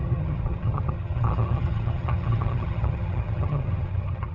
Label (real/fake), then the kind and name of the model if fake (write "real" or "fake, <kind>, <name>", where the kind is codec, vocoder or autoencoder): fake, vocoder, HiFi-GAN